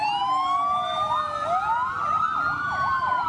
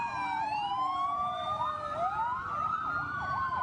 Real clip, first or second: first